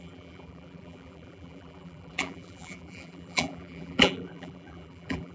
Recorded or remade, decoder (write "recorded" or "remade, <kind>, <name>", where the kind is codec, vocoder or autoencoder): remade, vocoder, BigVGAN v2